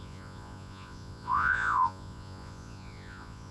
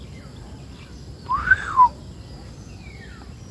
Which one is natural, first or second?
second